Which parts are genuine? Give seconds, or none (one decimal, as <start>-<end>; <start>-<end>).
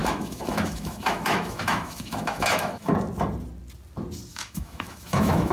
2.9-4.3